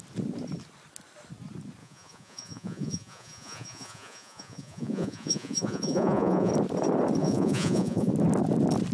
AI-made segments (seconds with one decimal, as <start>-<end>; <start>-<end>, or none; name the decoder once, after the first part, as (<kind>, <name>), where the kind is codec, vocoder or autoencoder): 1.8-6.5 (vocoder, Vocos); 7.2-8.1